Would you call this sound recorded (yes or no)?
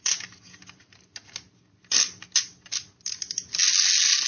yes